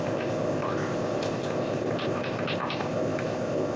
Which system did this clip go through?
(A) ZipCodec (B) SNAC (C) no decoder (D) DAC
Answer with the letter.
A